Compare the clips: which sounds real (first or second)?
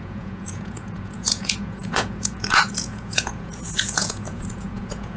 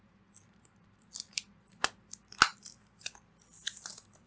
second